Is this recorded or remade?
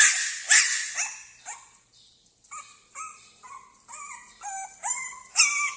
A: recorded